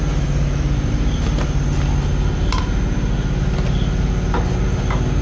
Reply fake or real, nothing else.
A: real